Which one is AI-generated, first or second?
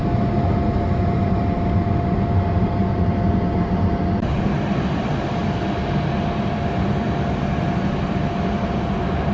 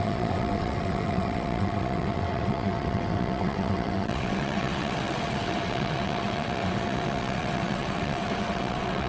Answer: second